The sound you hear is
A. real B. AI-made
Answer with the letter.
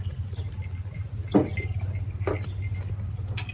A